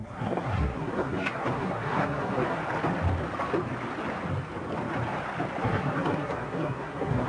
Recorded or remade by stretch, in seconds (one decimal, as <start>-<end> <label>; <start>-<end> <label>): 0.0-2.6 remade; 2.6-5.6 recorded; 5.6-7.3 remade